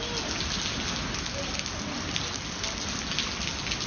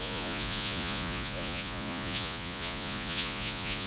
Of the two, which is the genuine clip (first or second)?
first